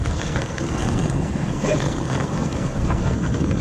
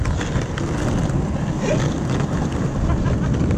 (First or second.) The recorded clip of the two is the second